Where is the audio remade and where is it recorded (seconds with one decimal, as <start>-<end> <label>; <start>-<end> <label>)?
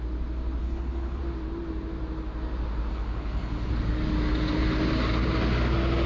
0.0-0.6 recorded; 0.6-1.2 remade; 1.2-2.9 recorded; 2.9-3.7 remade; 3.7-6.1 recorded